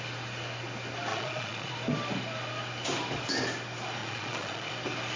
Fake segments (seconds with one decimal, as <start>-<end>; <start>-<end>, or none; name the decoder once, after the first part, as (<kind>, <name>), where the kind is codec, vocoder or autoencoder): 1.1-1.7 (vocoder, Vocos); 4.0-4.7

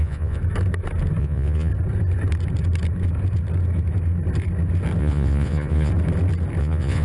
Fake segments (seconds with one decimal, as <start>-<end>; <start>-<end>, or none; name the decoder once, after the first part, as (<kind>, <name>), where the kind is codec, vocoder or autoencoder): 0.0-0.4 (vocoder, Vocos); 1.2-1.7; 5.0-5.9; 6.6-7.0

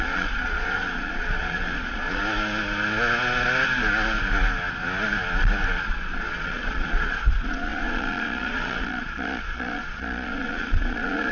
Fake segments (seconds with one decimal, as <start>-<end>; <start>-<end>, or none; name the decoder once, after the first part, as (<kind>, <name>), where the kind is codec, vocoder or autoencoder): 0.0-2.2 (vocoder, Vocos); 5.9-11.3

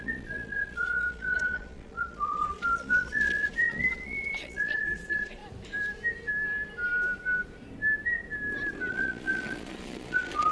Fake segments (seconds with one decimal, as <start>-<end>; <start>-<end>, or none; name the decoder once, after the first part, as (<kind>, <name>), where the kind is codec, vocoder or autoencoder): 0.0-5.4 (vocoder, Vocos); 8.9-10.5